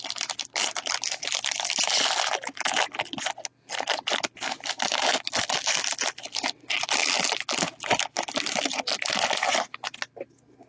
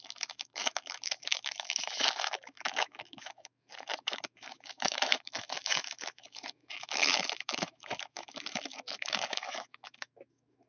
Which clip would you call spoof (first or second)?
second